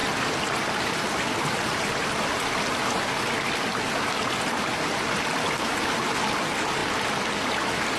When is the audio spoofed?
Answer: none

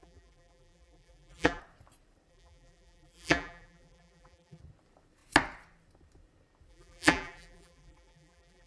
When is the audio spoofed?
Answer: 0.0-1.6; 2.3-4.6; 6.7-8.7

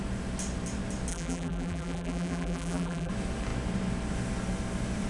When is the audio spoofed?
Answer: 1.1-3.1

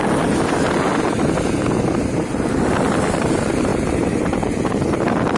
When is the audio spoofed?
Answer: 3.7-4.9

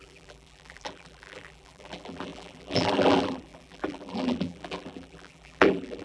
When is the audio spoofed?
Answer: 0.0-6.0